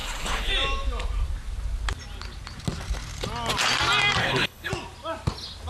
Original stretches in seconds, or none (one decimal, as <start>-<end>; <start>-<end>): 0.5-4.2; 4.7-5.7